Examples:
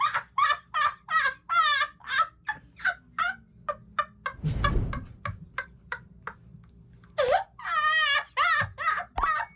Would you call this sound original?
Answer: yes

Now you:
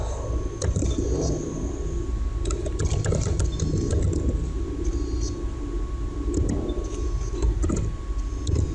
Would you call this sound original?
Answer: yes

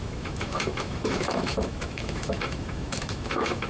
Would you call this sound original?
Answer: no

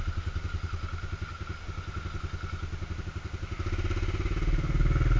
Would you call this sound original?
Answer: yes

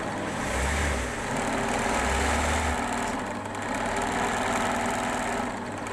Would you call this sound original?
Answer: yes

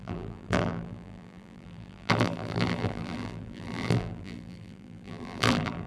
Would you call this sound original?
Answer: no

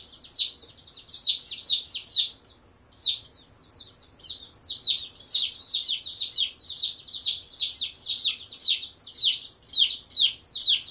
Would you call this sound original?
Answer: yes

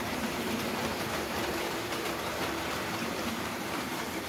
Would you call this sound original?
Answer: no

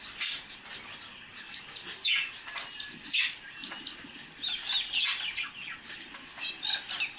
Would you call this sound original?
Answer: yes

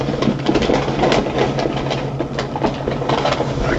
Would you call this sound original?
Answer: yes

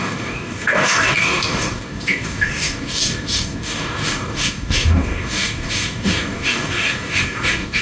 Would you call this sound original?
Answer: no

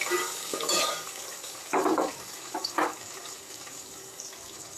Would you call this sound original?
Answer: no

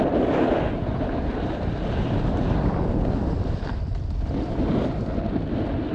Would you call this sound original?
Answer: yes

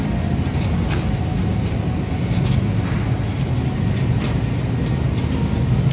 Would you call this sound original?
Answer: yes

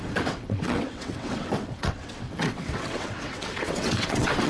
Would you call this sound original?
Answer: no